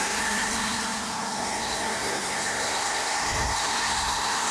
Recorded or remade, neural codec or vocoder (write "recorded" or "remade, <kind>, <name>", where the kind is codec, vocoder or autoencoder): remade, codec, SNAC